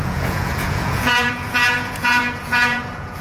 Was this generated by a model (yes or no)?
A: yes